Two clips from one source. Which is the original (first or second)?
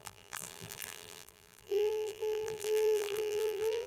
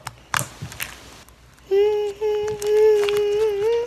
second